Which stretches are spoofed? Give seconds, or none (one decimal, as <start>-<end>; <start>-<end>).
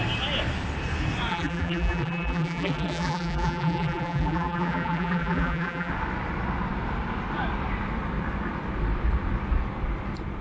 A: 1.3-5.9